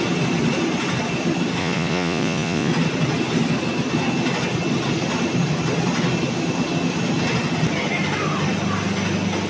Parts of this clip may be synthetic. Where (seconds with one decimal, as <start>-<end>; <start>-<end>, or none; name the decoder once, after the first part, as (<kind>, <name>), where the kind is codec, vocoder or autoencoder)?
1.6-2.7 (vocoder, Vocos)